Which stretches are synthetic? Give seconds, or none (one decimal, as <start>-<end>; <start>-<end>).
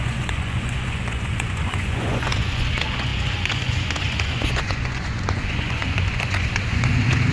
0.0-7.3